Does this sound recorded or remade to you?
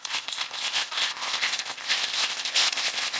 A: remade